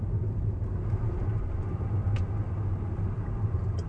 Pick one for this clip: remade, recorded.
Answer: recorded